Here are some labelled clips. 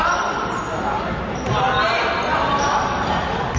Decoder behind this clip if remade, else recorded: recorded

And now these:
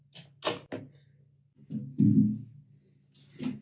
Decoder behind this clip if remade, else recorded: recorded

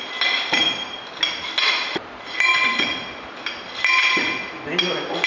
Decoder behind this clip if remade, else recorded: recorded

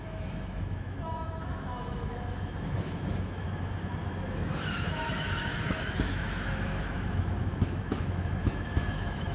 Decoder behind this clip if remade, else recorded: remade, autoencoder, DAC-VAE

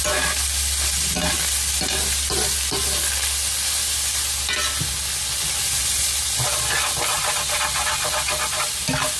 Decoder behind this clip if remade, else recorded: recorded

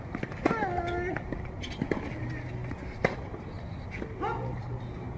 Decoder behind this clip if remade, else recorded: recorded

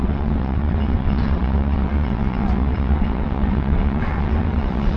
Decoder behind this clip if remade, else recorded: remade, vocoder, WaveNeXt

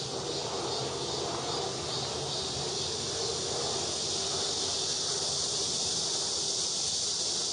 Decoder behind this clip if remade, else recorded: recorded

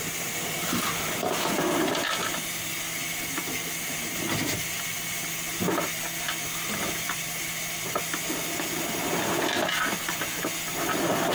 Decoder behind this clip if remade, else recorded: recorded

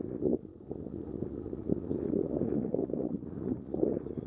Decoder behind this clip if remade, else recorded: remade, vocoder, Vocos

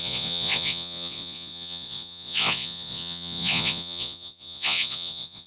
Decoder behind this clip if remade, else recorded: remade, vocoder, Vocos